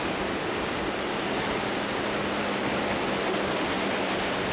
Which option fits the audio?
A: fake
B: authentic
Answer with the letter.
B